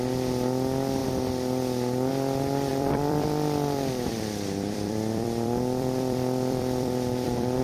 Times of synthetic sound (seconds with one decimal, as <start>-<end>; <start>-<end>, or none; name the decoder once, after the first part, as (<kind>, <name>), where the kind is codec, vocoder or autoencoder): 2.7-7.6 (vocoder, BigVGAN v2)